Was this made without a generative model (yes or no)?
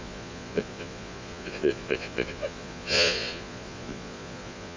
no